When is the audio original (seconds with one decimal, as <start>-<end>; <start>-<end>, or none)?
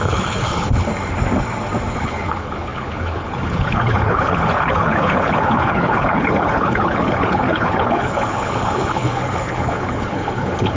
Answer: 0.9-1.9